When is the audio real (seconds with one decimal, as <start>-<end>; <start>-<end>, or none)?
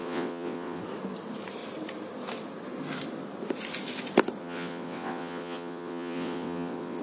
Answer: 0.8-4.4